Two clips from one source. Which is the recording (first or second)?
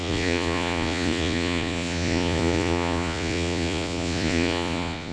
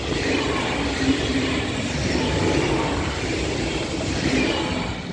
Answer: second